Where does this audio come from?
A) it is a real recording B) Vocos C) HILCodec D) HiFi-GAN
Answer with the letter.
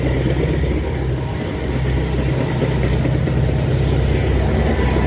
A